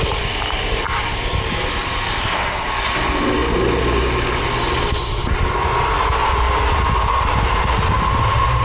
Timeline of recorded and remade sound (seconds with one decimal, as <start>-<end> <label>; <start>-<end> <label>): 0.0-8.6 recorded